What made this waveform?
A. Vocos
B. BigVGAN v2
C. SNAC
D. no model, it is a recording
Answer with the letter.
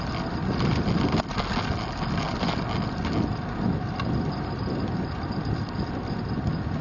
D